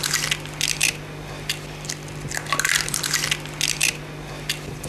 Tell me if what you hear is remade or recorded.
recorded